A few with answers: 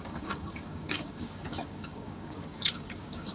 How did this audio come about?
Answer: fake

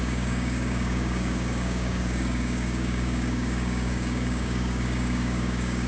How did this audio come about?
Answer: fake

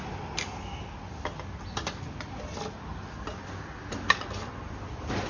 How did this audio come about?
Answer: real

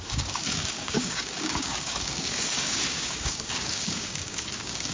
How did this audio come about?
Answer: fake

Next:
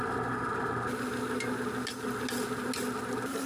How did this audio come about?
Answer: real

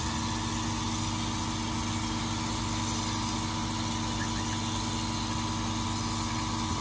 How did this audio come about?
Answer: real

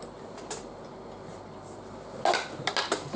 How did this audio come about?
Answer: real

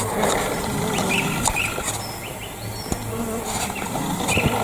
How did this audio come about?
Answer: real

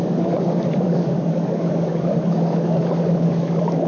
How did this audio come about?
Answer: fake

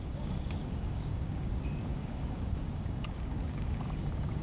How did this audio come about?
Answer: fake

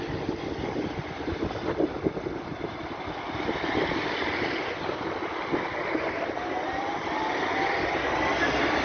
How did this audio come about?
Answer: real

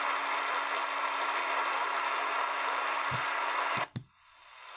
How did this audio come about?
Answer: real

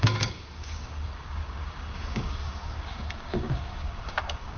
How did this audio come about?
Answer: fake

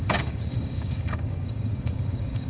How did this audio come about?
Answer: fake